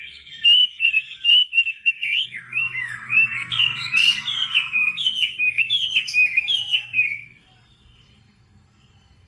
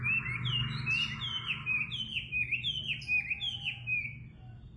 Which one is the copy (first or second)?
first